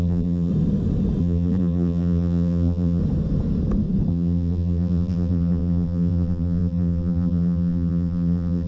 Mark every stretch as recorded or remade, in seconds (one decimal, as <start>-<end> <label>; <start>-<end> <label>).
0.0-0.5 remade; 0.5-1.2 recorded; 1.2-3.0 remade; 3.0-4.1 recorded; 4.1-8.7 remade